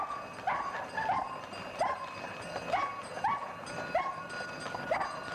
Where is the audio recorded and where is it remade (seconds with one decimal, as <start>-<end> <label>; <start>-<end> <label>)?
0.0-5.3 recorded

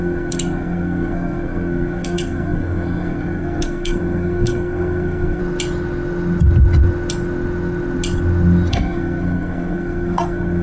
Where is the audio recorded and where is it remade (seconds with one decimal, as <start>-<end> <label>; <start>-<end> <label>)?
0.0-5.4 remade; 5.4-8.7 recorded; 8.7-10.6 remade

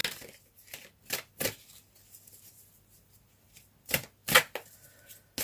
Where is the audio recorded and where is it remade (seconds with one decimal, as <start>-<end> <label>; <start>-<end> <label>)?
0.0-5.4 recorded

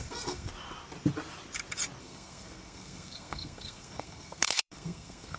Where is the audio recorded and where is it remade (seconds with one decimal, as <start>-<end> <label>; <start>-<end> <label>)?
0.0-0.5 remade; 0.5-2.0 recorded; 2.0-5.4 remade

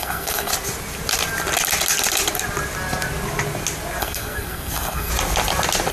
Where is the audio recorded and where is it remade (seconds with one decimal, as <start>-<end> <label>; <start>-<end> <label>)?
0.0-0.5 remade; 0.5-4.0 recorded; 4.0-5.1 remade; 5.1-5.9 recorded

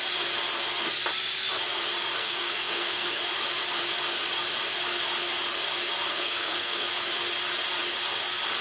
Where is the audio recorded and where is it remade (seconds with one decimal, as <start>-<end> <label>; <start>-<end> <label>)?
0.0-2.2 recorded; 2.2-3.2 remade; 3.2-6.1 recorded; 6.1-6.9 remade; 6.9-8.6 recorded

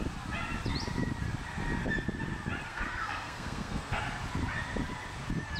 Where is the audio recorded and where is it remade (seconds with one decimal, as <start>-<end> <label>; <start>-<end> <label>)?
0.0-2.6 recorded; 2.6-4.0 remade; 4.0-5.6 recorded

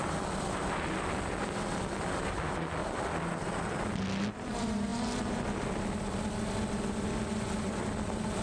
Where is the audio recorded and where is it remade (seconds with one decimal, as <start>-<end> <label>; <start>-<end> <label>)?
0.0-8.4 recorded